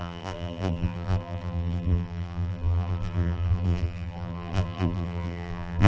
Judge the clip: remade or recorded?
remade